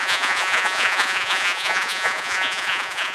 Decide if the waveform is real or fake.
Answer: fake